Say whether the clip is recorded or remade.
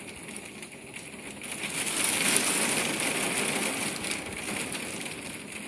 recorded